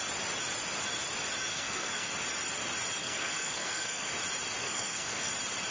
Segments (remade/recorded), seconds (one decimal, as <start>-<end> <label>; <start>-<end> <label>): 0.0-1.5 recorded; 1.5-2.1 remade; 2.1-3.0 recorded; 3.0-4.1 remade; 4.1-4.6 recorded; 4.6-5.3 remade; 5.3-5.7 recorded